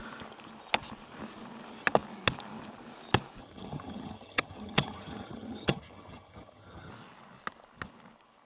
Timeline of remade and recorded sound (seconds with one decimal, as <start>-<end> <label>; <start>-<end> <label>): 0.0-3.4 recorded; 3.4-6.9 remade; 6.9-8.5 recorded